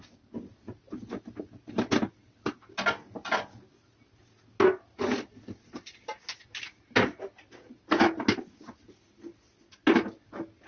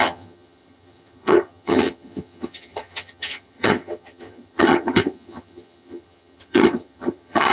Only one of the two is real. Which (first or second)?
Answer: first